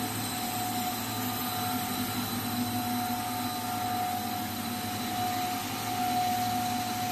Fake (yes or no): no